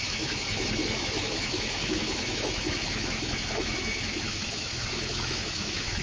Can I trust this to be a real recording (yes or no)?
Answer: no